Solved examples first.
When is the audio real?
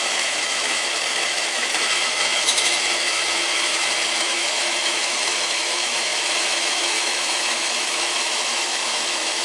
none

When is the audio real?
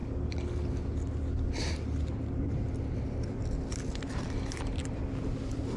0.0-5.8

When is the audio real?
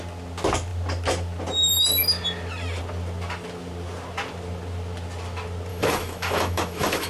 0.0-5.7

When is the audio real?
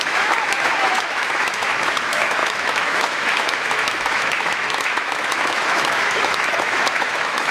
none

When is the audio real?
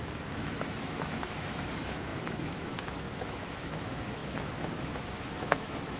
none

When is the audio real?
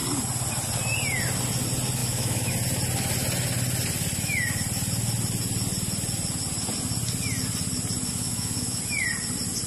0.0-2.0; 2.5-8.1; 8.8-9.7